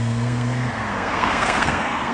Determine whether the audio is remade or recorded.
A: remade